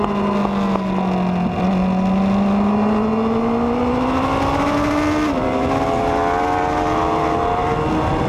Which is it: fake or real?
real